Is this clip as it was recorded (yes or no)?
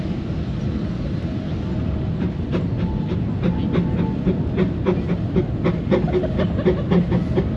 yes